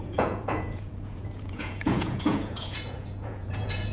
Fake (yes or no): yes